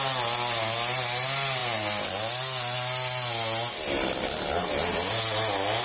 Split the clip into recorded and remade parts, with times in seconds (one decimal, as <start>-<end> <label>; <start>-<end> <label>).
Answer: 0.0-5.8 recorded